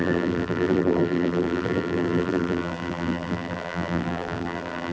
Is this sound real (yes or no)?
no